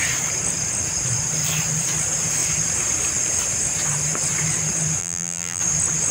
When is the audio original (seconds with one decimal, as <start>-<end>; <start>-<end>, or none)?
0.0-5.0; 5.6-6.1